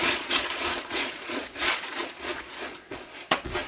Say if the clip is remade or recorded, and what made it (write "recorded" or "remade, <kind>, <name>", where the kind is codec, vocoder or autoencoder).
remade, vocoder, Vocos